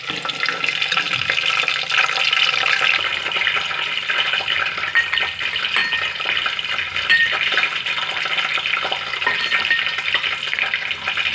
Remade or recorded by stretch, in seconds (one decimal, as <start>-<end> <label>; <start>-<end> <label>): 0.0-11.3 recorded